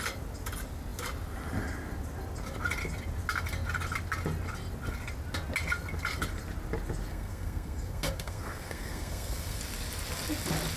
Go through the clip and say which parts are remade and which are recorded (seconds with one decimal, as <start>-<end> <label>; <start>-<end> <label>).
0.0-7.1 recorded; 7.1-9.6 remade; 9.6-10.8 recorded